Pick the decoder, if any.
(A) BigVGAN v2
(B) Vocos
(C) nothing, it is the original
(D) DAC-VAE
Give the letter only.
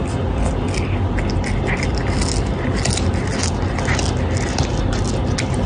C